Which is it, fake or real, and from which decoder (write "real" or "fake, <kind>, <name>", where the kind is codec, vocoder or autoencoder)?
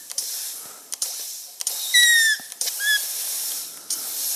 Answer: real